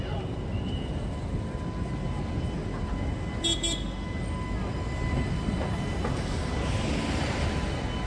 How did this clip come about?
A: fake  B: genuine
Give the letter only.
B